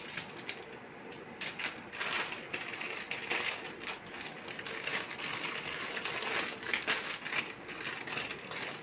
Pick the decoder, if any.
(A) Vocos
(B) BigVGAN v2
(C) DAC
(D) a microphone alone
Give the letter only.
D